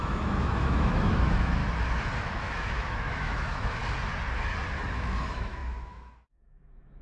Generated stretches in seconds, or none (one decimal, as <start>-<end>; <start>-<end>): 0.0-1.6; 2.2-3.8; 4.9-7.0